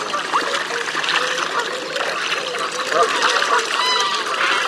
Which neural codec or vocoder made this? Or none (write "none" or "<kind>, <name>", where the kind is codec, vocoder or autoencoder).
none